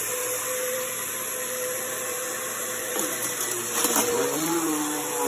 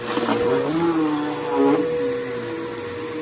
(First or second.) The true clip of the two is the second